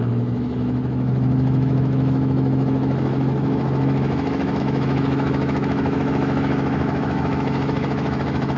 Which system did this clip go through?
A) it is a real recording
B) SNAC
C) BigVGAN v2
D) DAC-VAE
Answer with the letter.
D